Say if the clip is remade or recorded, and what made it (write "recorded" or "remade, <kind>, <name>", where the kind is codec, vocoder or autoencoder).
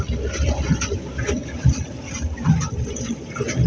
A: recorded